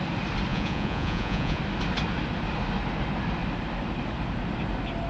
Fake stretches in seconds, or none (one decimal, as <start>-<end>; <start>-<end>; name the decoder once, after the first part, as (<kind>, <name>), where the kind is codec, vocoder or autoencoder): 0.5-1.6 (vocoder, Vocos)